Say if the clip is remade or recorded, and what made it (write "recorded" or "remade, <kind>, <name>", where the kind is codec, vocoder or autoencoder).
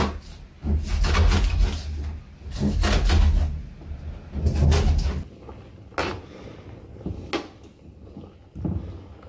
recorded